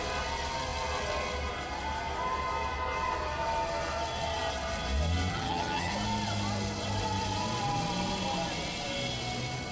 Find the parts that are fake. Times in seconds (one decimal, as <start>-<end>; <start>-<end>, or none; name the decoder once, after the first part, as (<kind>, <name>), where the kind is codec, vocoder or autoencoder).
5.3-5.9 (vocoder, HiFi-GAN)